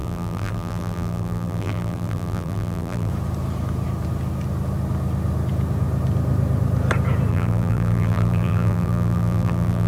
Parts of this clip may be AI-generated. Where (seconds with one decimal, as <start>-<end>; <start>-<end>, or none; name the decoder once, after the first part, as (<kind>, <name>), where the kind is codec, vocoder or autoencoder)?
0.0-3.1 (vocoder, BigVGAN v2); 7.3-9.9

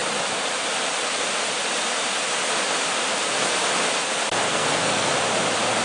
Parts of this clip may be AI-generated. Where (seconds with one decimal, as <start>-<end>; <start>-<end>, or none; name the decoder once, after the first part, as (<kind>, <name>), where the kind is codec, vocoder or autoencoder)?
4.5-5.1 (codec, SNAC)

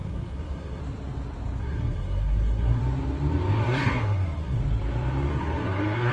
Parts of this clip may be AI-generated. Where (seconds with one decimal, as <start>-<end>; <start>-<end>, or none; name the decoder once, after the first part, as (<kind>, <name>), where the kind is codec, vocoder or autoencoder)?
0.0-0.8 (codec, SNAC); 1.6-2.8; 3.6-4.6; 5.3-6.1

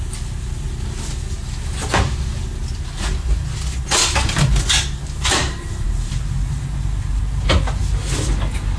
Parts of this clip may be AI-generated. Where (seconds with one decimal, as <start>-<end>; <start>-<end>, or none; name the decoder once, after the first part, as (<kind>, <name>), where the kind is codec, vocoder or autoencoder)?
5.4-7.2 (vocoder, BigVGAN v2)

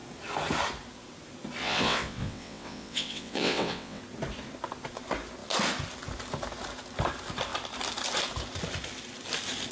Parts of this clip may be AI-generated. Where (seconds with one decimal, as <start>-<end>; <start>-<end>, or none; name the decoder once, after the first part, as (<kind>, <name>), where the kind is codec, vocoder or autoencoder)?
1.6-4.0 (vocoder, WaveNeXt)

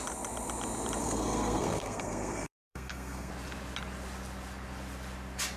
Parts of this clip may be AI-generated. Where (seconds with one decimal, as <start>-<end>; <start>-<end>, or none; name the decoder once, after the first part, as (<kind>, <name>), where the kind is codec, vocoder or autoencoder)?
1.0-3.3 (codec, SNAC)

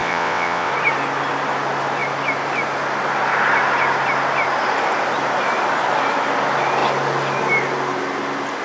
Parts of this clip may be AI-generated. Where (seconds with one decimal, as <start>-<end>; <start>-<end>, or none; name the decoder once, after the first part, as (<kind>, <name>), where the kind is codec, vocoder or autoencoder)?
0.0-0.7 (vocoder, WaveNeXt)

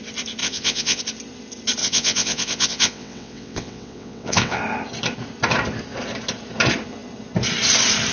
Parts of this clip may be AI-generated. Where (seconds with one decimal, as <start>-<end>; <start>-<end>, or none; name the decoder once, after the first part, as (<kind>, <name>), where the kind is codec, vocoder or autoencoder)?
0.4-1.0 (vocoder, WaveNeXt); 1.8-4.6